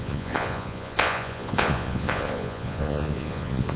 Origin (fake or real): fake